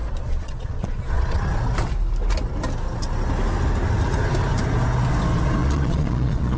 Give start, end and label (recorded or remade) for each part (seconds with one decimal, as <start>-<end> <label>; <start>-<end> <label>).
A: 0.0-1.6 remade; 1.6-5.6 recorded; 5.6-6.6 remade